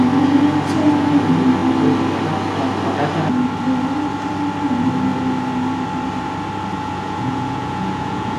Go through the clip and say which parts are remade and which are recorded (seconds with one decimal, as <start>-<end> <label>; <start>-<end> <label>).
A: 0.0-6.7 recorded; 6.7-8.4 remade